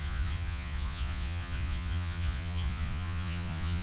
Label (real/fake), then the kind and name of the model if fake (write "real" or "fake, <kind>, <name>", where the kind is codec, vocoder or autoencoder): fake, vocoder, Vocos